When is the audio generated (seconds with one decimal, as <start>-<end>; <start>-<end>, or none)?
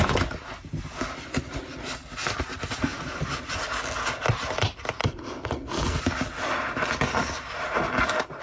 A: 5.0-6.0